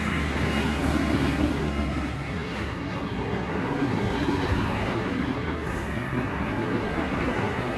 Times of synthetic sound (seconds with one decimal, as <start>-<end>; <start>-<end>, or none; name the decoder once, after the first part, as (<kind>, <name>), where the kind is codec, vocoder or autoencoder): 0.0-7.8 (codec, SNAC)